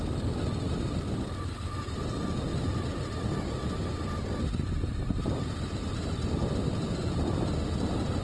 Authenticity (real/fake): real